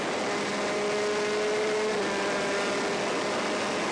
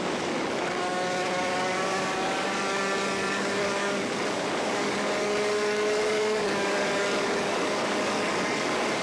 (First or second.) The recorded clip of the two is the first